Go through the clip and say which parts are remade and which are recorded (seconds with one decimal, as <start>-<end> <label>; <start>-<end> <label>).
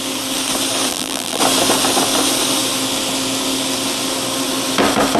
0.0-0.9 recorded; 0.9-1.4 remade; 1.4-5.2 recorded